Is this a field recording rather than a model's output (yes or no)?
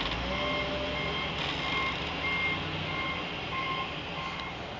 yes